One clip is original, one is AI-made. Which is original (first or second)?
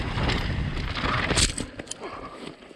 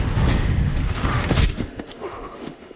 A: first